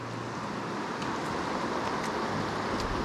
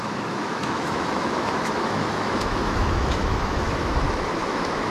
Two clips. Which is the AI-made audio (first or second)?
second